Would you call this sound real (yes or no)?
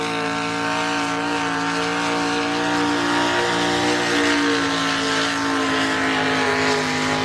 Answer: yes